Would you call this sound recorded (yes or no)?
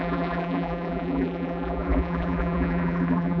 no